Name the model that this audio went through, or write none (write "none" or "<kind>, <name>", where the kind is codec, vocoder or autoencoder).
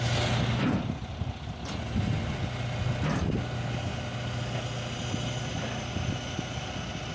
none